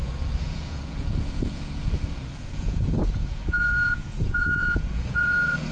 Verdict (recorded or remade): remade